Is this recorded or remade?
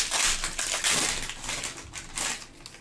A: recorded